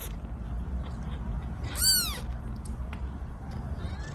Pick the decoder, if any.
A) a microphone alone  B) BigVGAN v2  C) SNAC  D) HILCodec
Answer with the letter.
A